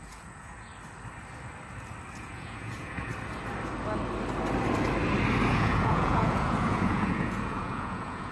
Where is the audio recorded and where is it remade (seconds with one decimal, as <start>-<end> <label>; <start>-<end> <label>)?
0.0-0.7 remade; 0.7-2.1 recorded; 2.1-3.1 remade; 3.1-5.5 recorded; 5.5-8.3 remade

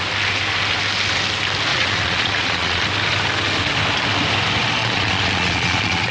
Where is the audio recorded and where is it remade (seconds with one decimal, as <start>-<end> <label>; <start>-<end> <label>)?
0.0-1.7 recorded; 1.7-2.8 remade; 2.8-4.8 recorded; 4.8-6.1 remade